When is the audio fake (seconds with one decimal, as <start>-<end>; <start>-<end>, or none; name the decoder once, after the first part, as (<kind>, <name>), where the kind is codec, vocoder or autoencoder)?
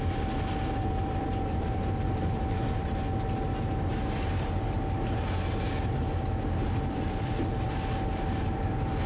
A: 0.0-2.9 (vocoder, BigVGAN v2); 6.4-9.1